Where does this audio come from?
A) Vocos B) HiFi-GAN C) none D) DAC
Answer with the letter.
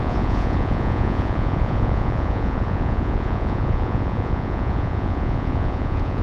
A